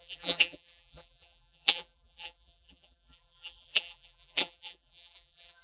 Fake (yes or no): yes